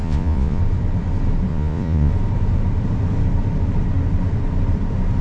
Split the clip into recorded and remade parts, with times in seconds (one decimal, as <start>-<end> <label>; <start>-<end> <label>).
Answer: 0.0-0.6 remade; 0.6-1.5 recorded; 1.5-2.1 remade; 2.1-5.2 recorded

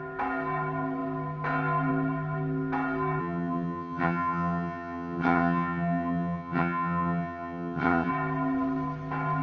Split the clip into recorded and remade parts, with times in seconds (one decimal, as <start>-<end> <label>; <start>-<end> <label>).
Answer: 0.0-3.2 recorded; 3.2-8.1 remade; 8.1-9.4 recorded